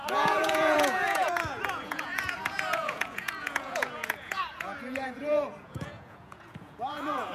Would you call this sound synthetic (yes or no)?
yes